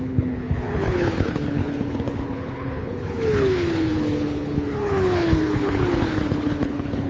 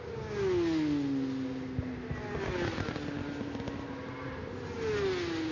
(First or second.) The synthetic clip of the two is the first